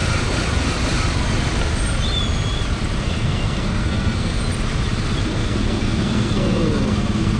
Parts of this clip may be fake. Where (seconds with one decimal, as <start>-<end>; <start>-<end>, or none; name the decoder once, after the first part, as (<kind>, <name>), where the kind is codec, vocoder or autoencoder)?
3.0-4.4 (codec, SNAC); 5.2-7.4